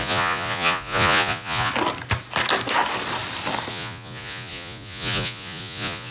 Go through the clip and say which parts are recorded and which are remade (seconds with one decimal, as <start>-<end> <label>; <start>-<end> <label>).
0.0-1.7 remade; 1.7-3.7 recorded; 3.7-6.1 remade